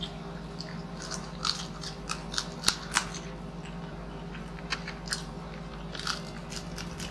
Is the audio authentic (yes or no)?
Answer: yes